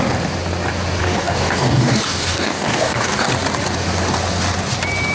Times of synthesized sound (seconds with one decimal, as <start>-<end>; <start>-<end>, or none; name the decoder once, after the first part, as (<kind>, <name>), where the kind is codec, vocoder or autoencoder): 1.0-3.3 (codec, DAC)